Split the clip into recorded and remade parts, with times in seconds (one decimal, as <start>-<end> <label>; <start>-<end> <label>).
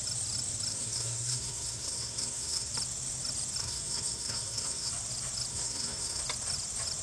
0.0-0.7 recorded; 0.7-2.7 remade; 2.7-3.6 recorded; 3.6-4.9 remade; 4.9-5.5 recorded; 5.5-6.2 remade; 6.2-7.0 recorded